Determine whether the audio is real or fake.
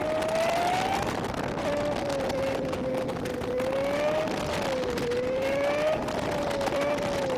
real